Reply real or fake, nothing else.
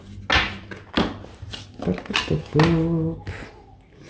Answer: real